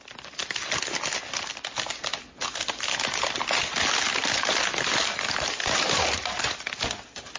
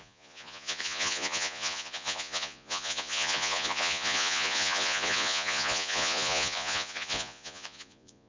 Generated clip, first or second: second